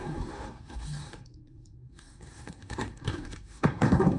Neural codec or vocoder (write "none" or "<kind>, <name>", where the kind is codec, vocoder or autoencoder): codec, SNAC